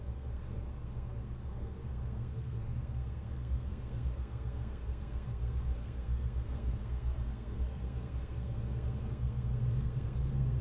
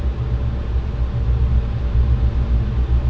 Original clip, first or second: second